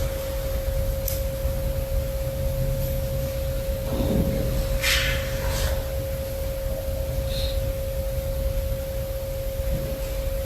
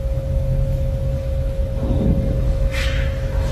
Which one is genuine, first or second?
first